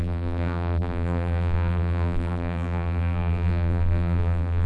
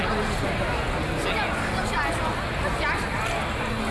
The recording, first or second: second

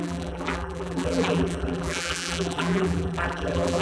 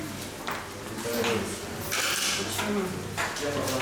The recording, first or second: second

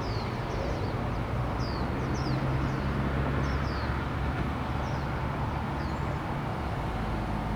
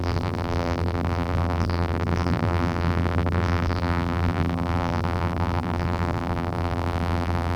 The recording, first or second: first